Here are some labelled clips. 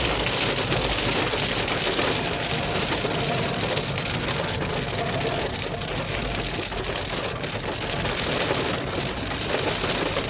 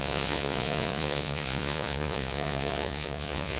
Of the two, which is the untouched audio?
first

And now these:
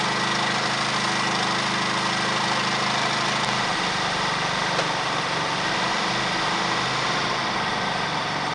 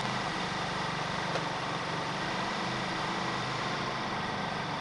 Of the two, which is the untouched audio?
first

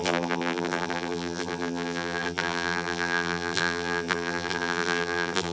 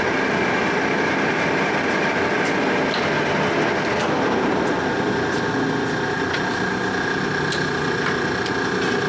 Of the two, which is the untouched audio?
second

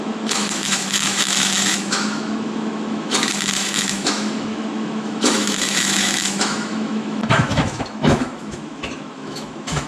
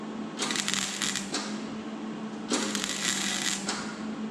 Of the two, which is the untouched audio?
second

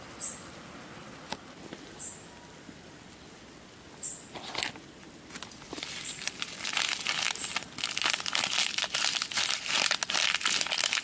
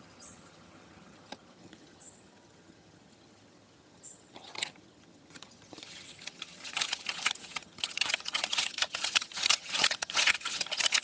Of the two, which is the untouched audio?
first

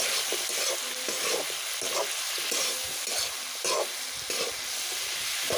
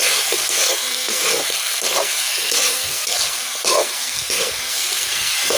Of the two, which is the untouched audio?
first